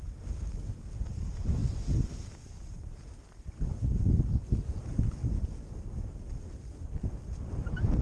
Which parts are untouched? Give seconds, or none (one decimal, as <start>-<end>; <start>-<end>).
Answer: 0.0-8.0